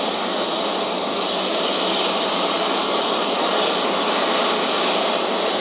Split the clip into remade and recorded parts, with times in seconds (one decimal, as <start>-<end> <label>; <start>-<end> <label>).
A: 0.0-1.1 recorded; 1.1-1.7 remade; 1.7-2.2 recorded; 2.2-3.2 remade; 3.2-5.6 recorded